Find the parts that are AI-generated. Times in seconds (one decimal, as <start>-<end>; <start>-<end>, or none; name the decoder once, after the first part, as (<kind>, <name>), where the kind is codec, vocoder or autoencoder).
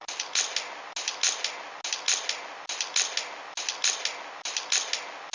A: none